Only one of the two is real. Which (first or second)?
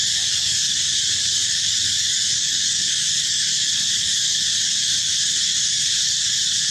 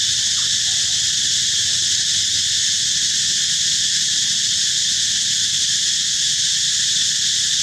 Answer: second